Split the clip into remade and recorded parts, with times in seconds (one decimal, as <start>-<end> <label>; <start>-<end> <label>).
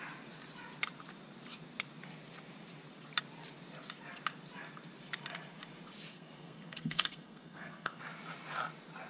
0.0-6.1 recorded; 6.1-8.0 remade; 8.0-9.1 recorded